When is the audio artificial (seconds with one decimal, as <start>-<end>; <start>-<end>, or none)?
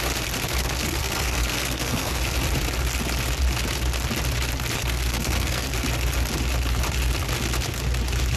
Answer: 0.8-2.2; 4.8-5.7